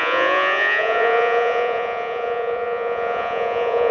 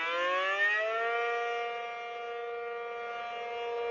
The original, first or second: second